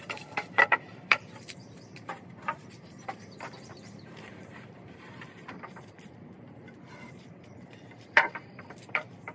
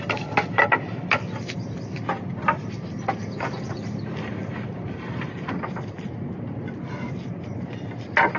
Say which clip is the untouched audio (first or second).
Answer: second